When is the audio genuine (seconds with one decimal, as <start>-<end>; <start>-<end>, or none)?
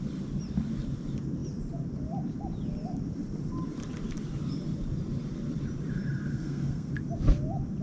0.0-6.3; 6.9-7.8